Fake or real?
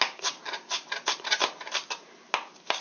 real